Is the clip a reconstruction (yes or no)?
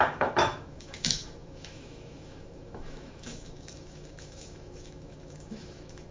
yes